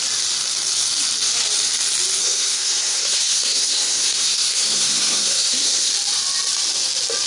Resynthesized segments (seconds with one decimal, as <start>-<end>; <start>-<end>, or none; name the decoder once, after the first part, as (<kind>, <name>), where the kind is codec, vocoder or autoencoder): 2.2-5.9 (codec, SNAC)